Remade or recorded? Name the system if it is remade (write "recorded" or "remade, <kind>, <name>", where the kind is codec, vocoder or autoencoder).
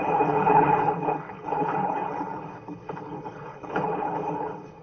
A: remade, codec, HILCodec